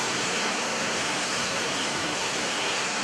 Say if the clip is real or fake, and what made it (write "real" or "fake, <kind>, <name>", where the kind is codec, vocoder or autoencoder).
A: fake, codec, SNAC